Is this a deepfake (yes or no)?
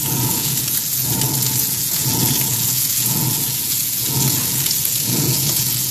yes